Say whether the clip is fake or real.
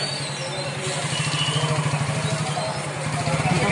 real